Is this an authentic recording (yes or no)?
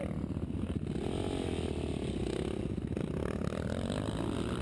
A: yes